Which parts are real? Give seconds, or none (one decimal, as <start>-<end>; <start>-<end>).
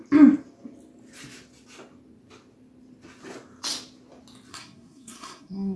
0.0-4.5